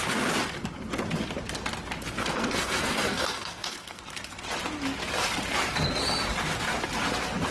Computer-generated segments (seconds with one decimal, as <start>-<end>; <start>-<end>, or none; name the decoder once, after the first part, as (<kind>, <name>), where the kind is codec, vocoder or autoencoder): 2.2-4.0 (codec, SNAC)